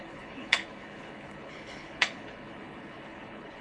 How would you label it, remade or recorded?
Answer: remade